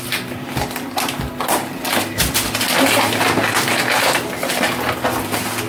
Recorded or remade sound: recorded